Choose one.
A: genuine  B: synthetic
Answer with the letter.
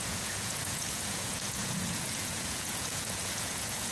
B